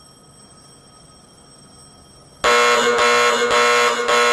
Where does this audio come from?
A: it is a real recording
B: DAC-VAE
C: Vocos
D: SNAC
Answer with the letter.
A